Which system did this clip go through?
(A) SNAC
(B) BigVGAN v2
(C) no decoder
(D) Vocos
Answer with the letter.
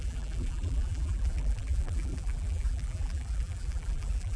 B